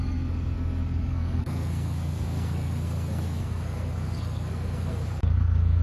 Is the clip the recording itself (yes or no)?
no